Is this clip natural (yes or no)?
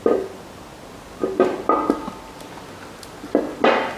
yes